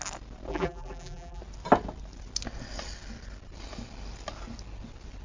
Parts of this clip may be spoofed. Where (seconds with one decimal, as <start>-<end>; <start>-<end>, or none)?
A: 0.5-1.4